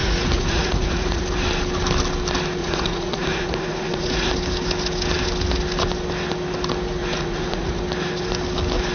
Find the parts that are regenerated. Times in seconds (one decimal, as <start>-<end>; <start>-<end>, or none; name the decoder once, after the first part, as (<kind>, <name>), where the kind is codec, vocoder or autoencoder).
0.0-1.2 (vocoder, Vocos); 2.6-4.3; 7.0-7.8